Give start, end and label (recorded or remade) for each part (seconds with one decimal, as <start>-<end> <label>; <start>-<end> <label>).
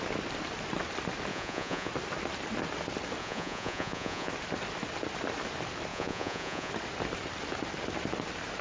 0.0-1.3 recorded; 1.3-1.9 remade; 1.9-3.2 recorded; 3.2-4.3 remade; 4.3-5.9 recorded; 5.9-6.7 remade; 6.7-8.6 recorded